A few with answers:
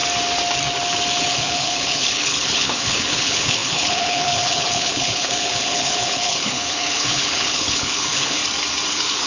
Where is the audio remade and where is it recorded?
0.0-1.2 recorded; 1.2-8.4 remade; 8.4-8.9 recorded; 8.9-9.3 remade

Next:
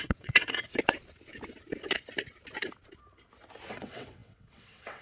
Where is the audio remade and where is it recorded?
0.0-0.7 remade; 0.7-3.7 recorded; 3.7-5.0 remade

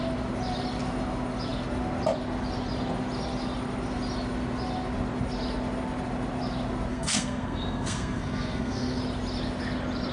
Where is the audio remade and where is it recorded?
0.0-6.9 recorded; 6.9-9.0 remade; 9.0-10.1 recorded